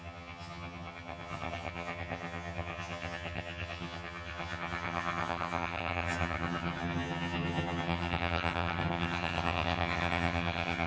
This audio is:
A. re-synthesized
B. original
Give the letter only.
A